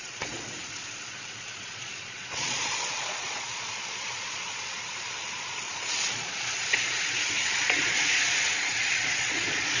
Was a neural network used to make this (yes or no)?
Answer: yes